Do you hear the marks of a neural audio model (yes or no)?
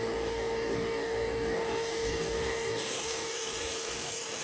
yes